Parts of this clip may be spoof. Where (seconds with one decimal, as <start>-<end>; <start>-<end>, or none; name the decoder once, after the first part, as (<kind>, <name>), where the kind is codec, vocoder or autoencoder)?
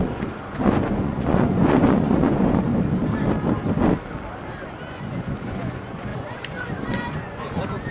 0.0-2.7 (vocoder, Vocos); 4.8-7.9